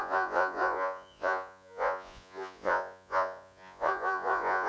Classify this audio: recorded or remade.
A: remade